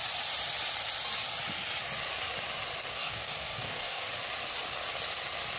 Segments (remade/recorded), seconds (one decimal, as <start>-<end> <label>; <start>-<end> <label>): 0.0-2.9 recorded; 2.9-4.1 remade; 4.1-5.6 recorded